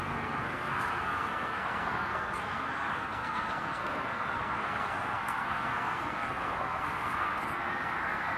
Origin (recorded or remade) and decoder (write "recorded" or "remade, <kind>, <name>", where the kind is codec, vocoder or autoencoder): remade, codec, SNAC